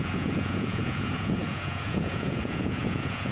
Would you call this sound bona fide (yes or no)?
no